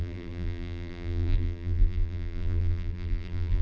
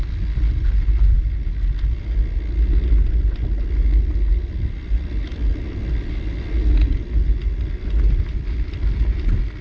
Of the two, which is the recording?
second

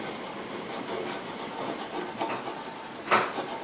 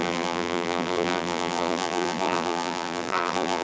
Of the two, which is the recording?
first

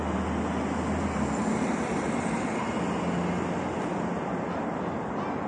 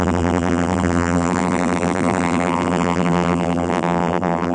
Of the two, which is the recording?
first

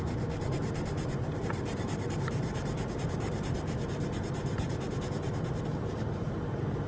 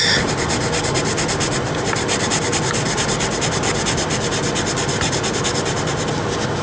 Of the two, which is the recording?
second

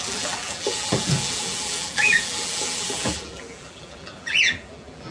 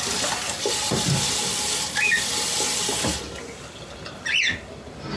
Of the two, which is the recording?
second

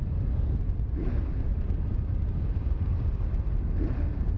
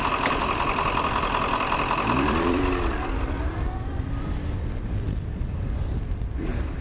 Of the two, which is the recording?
first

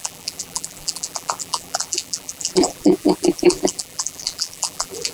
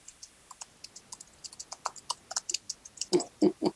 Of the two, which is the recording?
second